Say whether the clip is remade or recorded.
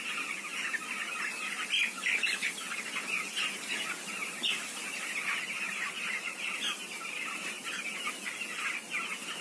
recorded